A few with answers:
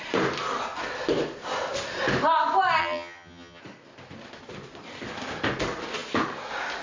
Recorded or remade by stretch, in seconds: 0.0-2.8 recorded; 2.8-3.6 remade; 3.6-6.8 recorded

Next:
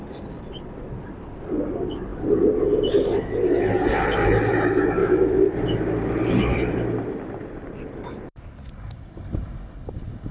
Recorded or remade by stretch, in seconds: 0.0-5.0 recorded; 5.0-9.9 remade; 9.9-10.3 recorded

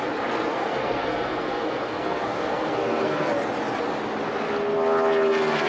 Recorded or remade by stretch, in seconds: 0.0-0.5 recorded; 0.5-3.3 remade; 3.3-5.7 recorded